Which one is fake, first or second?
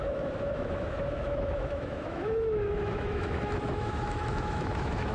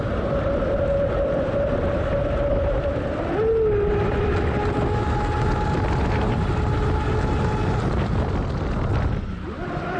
first